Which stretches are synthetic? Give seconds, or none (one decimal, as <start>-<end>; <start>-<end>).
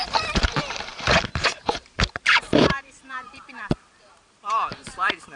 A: 0.0-5.4